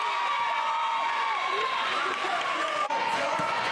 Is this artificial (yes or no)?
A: yes